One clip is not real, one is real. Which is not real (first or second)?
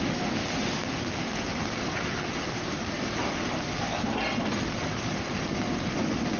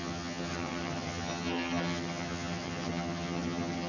second